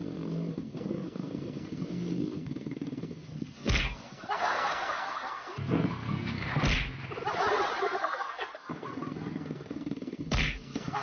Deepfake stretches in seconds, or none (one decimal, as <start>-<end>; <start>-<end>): 0.0-6.5; 7.8-11.0